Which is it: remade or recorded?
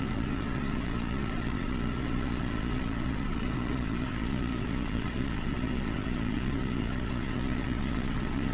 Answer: remade